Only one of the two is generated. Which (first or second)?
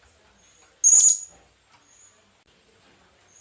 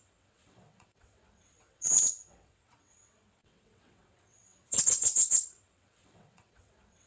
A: second